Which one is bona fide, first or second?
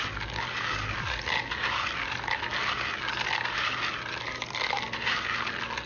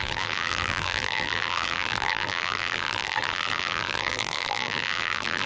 first